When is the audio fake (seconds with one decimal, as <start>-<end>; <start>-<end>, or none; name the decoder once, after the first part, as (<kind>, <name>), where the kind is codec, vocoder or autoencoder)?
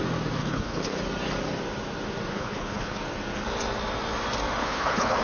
0.4-1.0 (codec, HILCodec); 2.3-3.0; 4.6-5.2